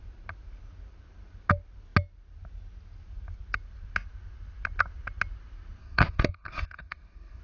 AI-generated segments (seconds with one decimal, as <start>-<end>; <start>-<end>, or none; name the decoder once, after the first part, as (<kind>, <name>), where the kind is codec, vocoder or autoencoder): 5.8-7.4 (codec, SNAC)